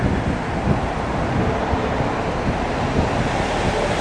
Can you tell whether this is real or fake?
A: real